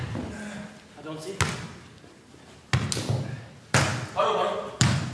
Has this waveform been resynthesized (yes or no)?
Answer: no